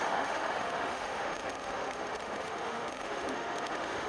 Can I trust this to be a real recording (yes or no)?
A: no